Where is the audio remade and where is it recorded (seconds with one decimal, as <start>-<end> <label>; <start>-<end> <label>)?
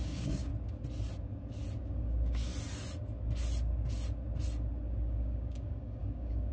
0.0-0.5 remade; 0.5-1.8 recorded; 1.8-2.5 remade; 2.5-5.0 recorded; 5.0-6.5 remade